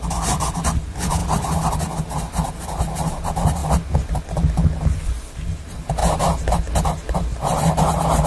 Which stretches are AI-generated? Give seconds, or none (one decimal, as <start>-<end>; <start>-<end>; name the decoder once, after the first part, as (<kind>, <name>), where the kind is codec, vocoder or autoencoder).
none